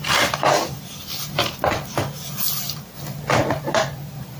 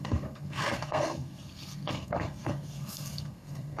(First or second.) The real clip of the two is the first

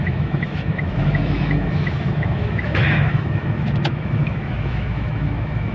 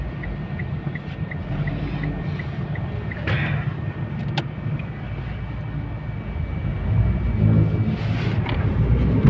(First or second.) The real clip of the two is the second